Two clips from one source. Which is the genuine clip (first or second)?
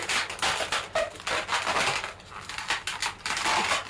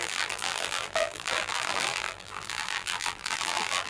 first